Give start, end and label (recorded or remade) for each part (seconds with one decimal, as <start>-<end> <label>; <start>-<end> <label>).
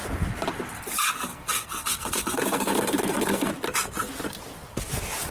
0.0-1.3 recorded; 1.3-3.5 remade; 3.5-5.3 recorded